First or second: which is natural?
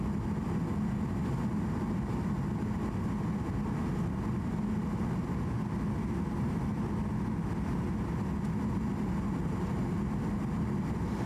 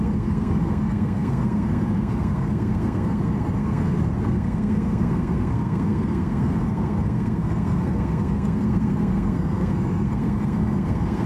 first